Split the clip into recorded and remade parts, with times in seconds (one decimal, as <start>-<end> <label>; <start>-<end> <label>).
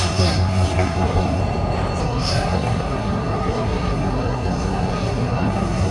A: 0.0-1.4 remade; 1.4-2.0 recorded; 2.0-5.9 remade